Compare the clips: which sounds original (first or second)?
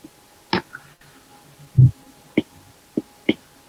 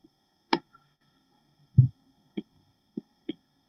first